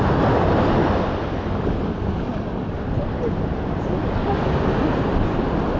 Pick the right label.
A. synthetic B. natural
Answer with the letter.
B